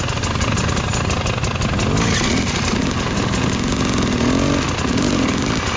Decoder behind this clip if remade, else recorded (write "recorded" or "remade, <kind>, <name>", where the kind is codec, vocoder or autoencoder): recorded